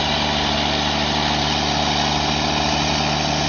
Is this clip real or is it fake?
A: real